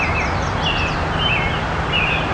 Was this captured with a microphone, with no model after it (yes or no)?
yes